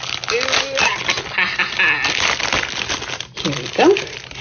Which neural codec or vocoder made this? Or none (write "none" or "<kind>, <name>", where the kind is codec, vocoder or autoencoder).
none